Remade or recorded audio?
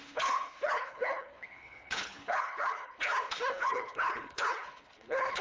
remade